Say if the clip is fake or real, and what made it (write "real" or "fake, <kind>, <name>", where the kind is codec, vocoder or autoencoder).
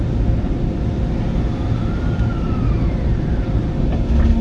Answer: real